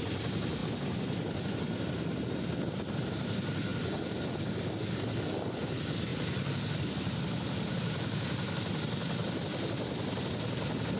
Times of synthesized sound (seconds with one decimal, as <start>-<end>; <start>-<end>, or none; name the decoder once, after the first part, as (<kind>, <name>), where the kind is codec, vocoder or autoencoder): 3.7-4.4 (vocoder, BigVGAN v2); 6.1-6.7